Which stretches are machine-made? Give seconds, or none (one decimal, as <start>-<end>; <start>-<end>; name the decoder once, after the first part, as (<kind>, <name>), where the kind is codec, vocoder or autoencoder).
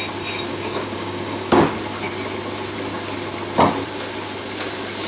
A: 0.5-1.6 (codec, DAC)